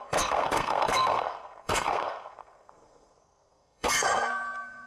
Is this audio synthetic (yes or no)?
yes